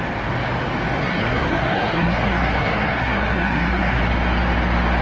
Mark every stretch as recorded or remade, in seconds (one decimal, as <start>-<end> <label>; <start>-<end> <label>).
0.0-1.0 recorded; 1.0-4.0 remade; 4.0-5.0 recorded